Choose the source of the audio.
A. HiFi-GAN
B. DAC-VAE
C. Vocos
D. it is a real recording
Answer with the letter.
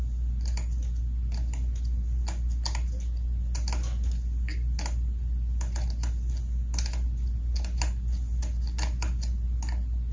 D